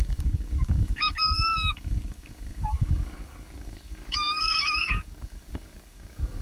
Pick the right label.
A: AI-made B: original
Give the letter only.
A